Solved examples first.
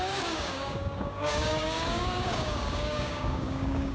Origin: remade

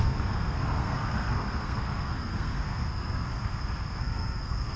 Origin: remade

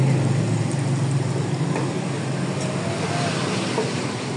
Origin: recorded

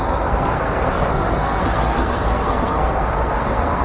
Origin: remade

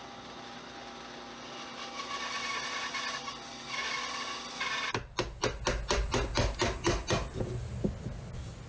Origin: recorded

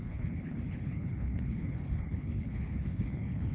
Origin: remade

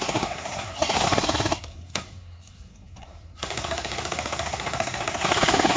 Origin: remade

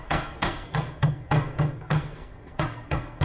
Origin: remade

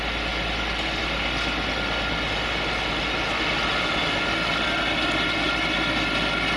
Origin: recorded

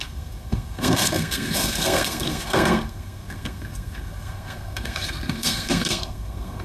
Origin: remade